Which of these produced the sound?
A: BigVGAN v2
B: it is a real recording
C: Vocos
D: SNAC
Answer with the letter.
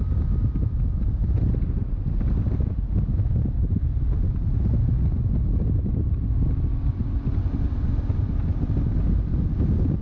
B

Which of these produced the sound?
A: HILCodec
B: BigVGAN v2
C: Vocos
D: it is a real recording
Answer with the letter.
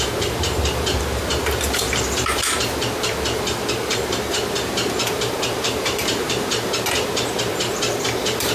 B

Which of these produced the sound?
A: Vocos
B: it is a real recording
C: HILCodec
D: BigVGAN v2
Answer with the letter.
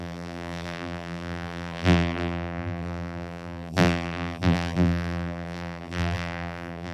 D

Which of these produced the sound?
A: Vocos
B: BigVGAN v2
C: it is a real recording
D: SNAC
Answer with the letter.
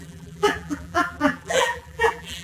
B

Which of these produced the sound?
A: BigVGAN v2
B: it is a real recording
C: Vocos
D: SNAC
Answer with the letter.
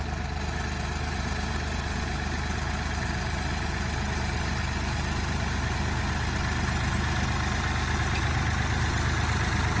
B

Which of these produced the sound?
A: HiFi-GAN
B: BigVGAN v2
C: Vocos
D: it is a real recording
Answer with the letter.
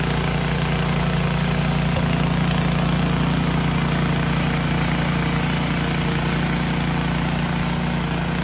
D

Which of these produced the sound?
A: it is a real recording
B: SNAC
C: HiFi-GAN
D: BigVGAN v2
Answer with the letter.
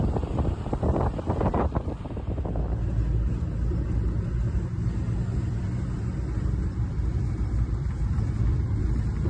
A